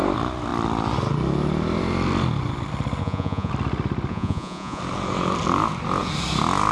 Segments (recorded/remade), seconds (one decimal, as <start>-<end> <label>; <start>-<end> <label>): 0.0-3.0 recorded; 3.0-3.5 remade; 3.5-4.1 recorded; 4.1-4.8 remade; 4.8-6.7 recorded